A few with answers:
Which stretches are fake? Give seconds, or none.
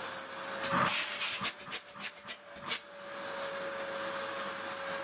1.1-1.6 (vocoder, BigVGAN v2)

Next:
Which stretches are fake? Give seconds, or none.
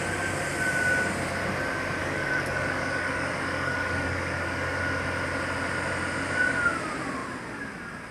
2.0-4.8 (codec, DAC)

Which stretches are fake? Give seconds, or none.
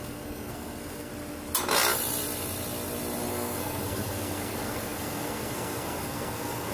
0.0-1.1 (codec, SNAC); 3.3-6.7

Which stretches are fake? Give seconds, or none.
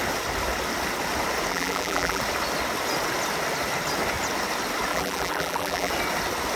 1.5-2.2 (vocoder, BigVGAN v2); 4.9-5.9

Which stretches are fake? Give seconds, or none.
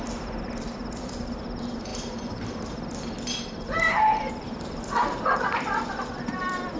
0.0-6.8 (vocoder, BigVGAN v2)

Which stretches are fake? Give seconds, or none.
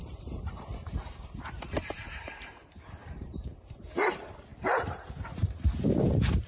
0.0-6.5 (vocoder, BigVGAN v2)